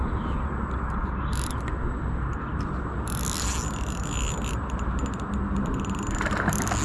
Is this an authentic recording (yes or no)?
yes